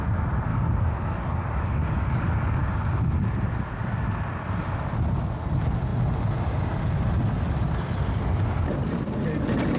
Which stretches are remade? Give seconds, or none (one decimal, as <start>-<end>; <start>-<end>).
0.5-2.6